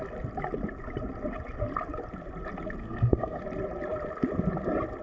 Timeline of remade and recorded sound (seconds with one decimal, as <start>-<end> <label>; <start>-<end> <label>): 0.0-2.8 recorded; 2.8-3.4 remade; 3.4-5.0 recorded